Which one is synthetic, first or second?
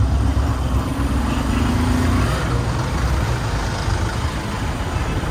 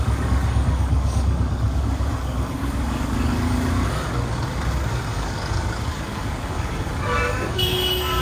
second